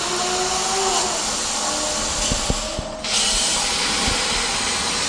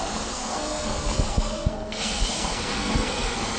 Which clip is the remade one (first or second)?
second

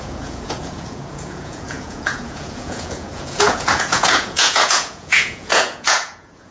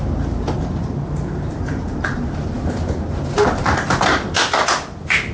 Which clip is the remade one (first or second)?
first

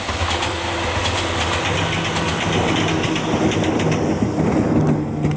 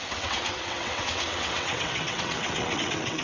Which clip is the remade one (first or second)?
second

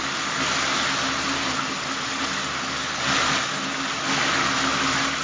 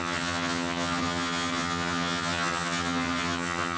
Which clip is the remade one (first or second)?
second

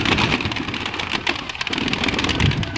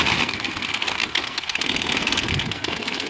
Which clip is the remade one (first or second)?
second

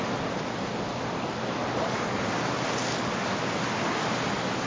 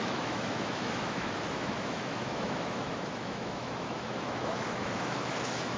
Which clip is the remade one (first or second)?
second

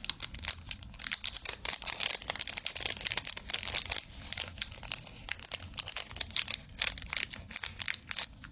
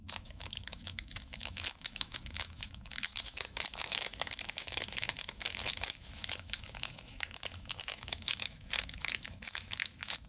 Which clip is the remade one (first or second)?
second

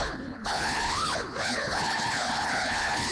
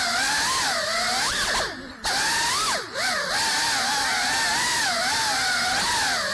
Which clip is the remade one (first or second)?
first